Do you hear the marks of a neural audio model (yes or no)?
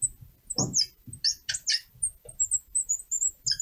no